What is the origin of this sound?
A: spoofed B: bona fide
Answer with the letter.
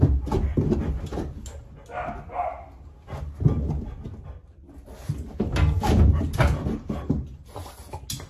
B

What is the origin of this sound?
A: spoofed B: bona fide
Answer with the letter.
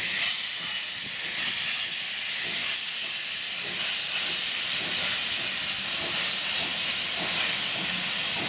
B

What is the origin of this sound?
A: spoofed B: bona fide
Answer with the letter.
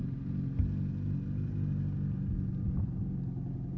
B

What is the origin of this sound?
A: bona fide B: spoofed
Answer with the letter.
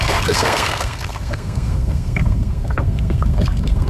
B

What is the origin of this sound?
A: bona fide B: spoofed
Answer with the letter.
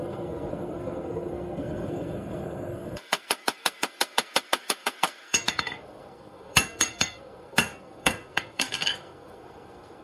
B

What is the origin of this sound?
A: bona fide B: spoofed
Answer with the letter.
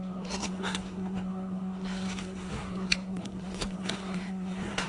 B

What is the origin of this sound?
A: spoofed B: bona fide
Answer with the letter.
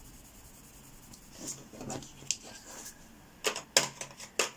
B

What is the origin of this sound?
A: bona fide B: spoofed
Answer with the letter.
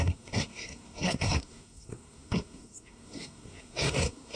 B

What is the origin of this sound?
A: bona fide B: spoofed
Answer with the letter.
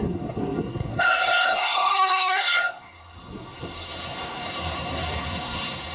B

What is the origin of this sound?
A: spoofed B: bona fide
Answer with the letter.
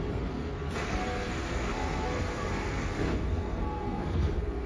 A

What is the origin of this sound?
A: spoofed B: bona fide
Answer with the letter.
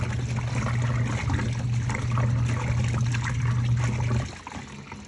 B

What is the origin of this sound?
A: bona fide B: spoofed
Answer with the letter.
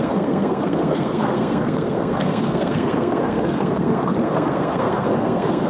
B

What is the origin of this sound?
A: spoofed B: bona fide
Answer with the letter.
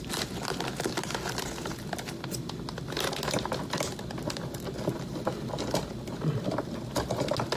B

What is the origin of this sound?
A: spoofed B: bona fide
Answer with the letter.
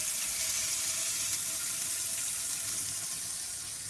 B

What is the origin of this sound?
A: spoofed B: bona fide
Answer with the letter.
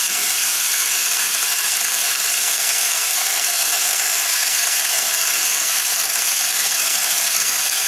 A